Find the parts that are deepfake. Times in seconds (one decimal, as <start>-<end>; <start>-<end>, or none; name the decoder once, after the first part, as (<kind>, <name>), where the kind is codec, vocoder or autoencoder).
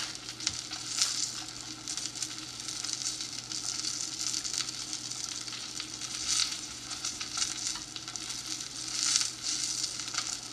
6.4-7.2 (vocoder, Vocos)